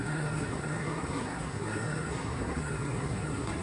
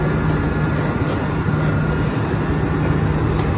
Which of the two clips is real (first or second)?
second